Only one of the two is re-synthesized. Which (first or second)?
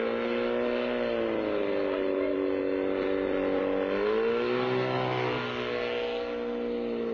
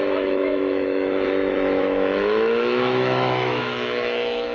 second